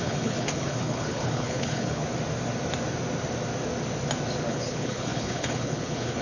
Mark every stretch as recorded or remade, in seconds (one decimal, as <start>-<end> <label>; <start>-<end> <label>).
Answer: 0.0-2.0 remade; 2.0-4.5 recorded; 4.5-6.2 remade

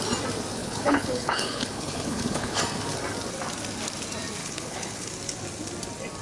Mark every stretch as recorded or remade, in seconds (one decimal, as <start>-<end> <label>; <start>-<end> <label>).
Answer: 0.0-0.6 recorded; 0.6-2.6 remade; 2.6-4.4 recorded; 4.4-5.1 remade; 5.1-6.2 recorded

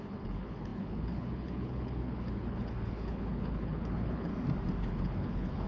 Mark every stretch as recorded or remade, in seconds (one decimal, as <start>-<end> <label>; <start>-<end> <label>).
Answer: 0.0-4.3 remade; 4.3-4.8 recorded; 4.8-5.7 remade